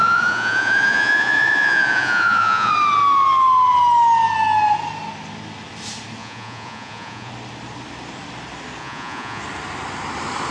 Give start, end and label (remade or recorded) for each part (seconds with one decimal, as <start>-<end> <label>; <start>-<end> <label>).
0.0-2.7 remade; 2.7-6.2 recorded; 6.2-7.3 remade; 7.3-8.8 recorded; 8.8-9.4 remade; 9.4-10.5 recorded